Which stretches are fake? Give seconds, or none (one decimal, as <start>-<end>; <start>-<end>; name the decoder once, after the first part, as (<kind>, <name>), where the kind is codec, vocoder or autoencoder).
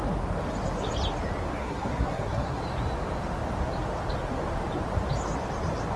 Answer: 1.6-2.6 (codec, SNAC)